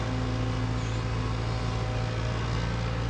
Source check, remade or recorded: recorded